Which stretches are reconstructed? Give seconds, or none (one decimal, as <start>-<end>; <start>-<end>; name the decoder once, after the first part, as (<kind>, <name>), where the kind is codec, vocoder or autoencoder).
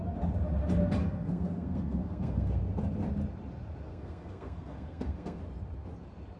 1.0-2.6 (codec, SNAC); 3.9-5.4